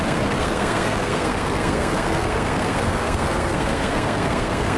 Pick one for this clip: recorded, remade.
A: remade